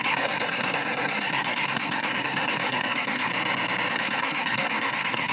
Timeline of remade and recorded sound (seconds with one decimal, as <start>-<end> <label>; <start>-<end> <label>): 0.0-3.3 remade; 3.3-3.9 recorded; 3.9-5.3 remade